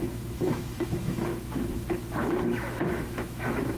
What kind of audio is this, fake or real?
fake